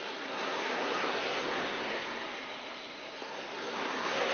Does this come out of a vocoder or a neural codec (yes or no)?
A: yes